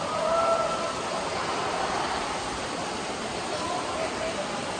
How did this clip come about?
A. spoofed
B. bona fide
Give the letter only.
B